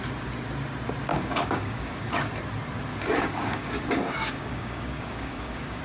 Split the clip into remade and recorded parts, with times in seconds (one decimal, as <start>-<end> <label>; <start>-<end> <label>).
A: 0.0-1.1 recorded; 1.1-2.3 remade; 2.3-2.9 recorded; 2.9-5.8 remade